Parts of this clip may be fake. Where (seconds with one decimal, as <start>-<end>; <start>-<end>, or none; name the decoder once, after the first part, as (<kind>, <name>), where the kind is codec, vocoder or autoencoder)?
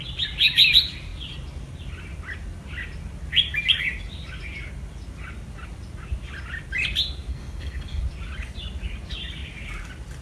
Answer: 7.3-8.0 (codec, SNAC)